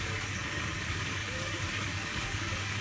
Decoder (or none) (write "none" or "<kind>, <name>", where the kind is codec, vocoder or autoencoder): codec, DAC